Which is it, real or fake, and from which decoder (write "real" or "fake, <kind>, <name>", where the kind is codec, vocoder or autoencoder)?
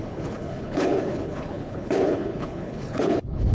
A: fake, codec, HILCodec